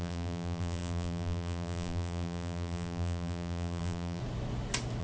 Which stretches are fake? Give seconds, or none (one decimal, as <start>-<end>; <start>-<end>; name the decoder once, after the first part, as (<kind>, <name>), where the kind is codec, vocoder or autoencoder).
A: 0.0-4.2 (vocoder, BigVGAN v2)